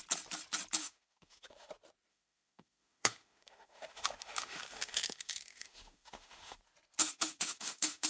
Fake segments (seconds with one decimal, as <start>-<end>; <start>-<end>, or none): 0.8-1.7; 2.1-6.6; 7.0-8.1